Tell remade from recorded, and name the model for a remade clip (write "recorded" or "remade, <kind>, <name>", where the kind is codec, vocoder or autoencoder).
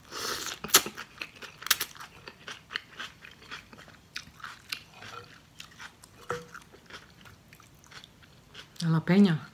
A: recorded